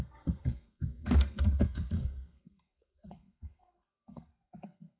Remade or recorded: remade